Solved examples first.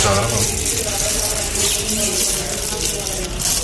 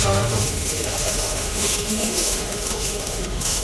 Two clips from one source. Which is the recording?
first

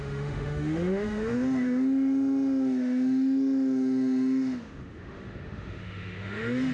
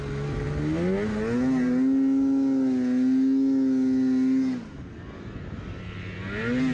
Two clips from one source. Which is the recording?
second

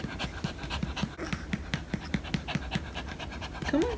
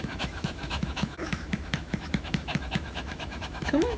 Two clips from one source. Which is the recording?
first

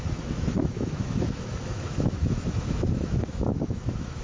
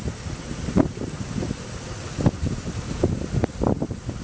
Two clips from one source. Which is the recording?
second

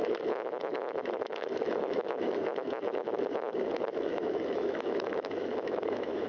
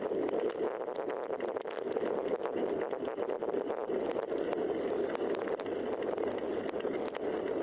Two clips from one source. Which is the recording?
second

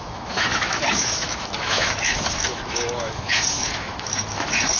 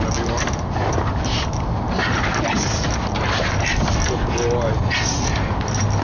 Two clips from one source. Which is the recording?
second